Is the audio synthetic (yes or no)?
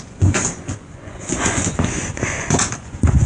yes